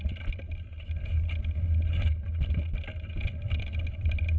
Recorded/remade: recorded